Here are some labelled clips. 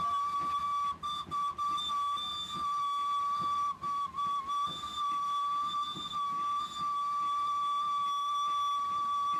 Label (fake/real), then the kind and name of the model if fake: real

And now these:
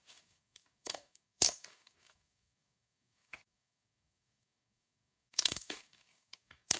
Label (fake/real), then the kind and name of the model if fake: fake, codec, DAC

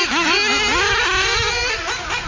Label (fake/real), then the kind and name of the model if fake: real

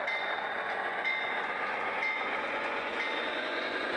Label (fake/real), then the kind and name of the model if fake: fake, vocoder, Vocos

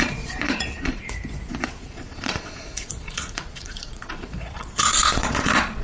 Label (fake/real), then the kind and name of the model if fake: fake, vocoder, Vocos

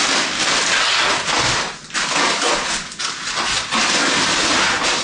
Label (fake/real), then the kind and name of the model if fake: real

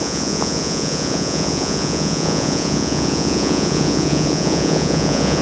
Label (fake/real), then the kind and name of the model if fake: fake, vocoder, Vocos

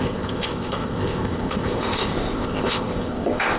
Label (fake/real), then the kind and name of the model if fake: fake, codec, ZipCodec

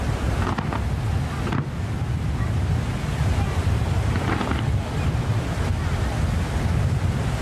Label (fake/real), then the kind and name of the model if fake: real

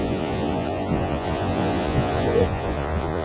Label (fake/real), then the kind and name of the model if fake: fake, vocoder, Vocos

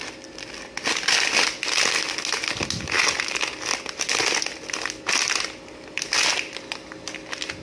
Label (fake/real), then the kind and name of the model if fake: real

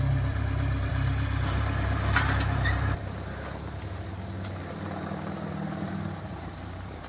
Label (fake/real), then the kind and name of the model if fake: fake, vocoder, BigVGAN v2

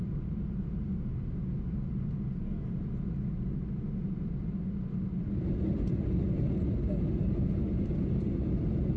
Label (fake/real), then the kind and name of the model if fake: real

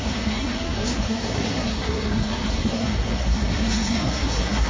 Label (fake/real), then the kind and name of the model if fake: fake, codec, SNAC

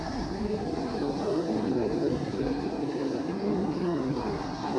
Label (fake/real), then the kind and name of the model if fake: fake, codec, SNAC